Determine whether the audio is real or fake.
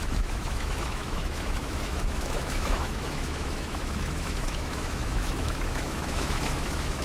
fake